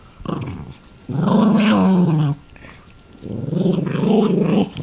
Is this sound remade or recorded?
recorded